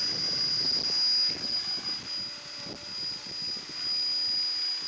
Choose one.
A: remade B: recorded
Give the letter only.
B